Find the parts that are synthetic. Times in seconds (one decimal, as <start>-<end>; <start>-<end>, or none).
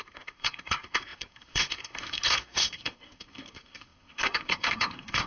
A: 0.0-5.3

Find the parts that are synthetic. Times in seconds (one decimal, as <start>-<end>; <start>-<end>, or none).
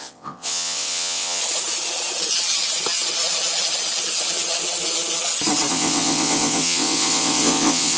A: 0.0-1.4; 5.7-8.0